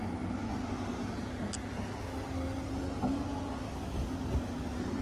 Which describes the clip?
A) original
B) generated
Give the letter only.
A